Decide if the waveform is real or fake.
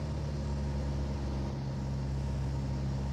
real